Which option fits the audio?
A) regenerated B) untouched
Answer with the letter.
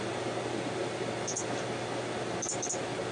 B